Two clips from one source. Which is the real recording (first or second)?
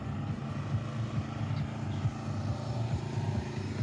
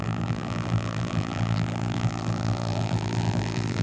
first